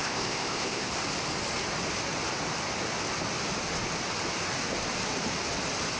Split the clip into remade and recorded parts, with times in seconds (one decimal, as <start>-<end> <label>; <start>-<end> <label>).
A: 0.0-0.9 remade; 0.9-6.0 recorded